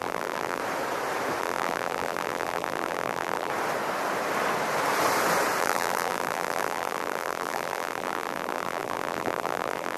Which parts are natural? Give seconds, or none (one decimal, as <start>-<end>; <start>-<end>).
0.6-1.4; 3.5-5.6